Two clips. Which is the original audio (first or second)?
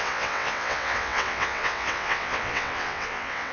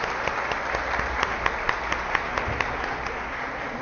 second